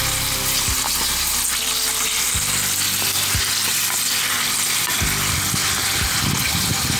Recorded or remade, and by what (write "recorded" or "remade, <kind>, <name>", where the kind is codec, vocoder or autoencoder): recorded